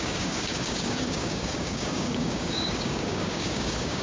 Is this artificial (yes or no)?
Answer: yes